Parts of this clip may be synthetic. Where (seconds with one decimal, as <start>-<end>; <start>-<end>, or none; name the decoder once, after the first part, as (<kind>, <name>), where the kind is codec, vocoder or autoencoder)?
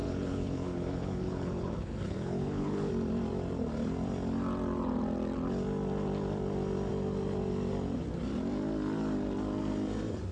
0.0-2.9 (codec, HILCodec)